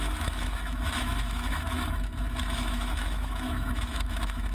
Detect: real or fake fake